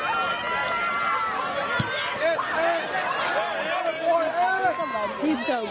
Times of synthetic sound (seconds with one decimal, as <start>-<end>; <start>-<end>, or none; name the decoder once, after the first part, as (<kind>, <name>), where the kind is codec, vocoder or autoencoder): none